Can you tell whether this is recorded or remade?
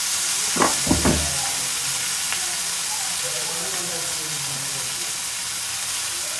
recorded